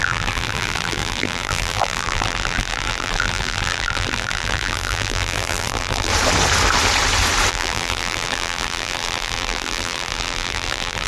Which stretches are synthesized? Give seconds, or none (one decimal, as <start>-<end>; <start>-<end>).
0.0-6.1; 7.5-11.1